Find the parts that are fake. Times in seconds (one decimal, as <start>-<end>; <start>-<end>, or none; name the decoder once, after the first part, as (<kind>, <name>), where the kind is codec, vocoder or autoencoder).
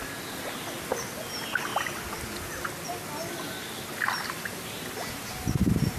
1.7-5.3 (vocoder, BigVGAN v2)